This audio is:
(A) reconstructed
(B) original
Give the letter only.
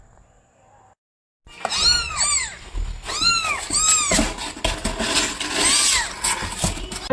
B